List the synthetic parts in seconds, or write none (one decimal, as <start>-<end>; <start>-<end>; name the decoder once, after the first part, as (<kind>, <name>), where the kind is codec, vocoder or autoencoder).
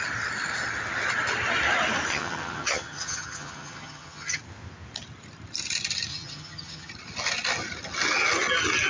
2.1-4.4 (vocoder, HiFi-GAN); 6.1-6.9